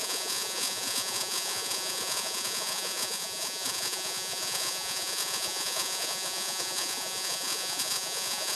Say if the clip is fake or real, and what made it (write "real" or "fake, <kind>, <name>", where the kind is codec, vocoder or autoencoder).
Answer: fake, vocoder, Vocos